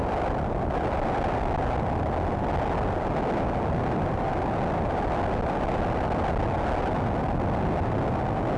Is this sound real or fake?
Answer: real